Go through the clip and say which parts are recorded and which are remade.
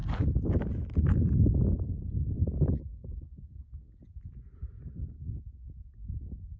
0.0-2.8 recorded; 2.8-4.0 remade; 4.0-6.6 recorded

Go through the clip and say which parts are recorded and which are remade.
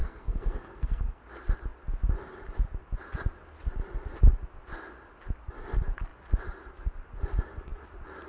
0.0-1.2 remade; 1.2-8.3 recorded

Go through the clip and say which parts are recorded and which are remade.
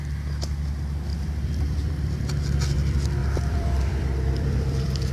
0.0-1.1 recorded; 1.1-2.2 remade; 2.2-3.2 recorded; 3.2-5.1 remade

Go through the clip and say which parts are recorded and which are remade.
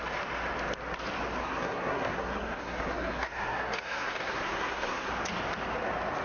0.0-1.4 recorded; 1.4-5.1 remade; 5.1-6.2 recorded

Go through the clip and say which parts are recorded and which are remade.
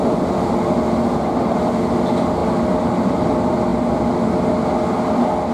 0.0-5.5 recorded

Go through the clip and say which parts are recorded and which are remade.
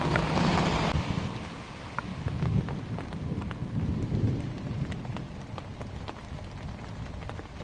0.0-7.6 recorded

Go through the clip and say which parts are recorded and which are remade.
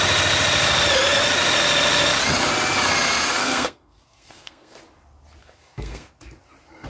0.0-3.4 recorded; 3.4-4.8 remade; 4.8-5.4 recorded; 5.4-6.1 remade; 6.1-6.9 recorded